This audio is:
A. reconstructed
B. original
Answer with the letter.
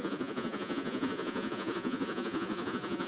A